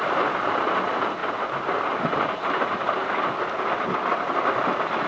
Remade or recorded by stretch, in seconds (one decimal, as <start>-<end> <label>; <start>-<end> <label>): 0.0-5.1 recorded